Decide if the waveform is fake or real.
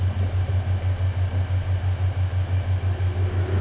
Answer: real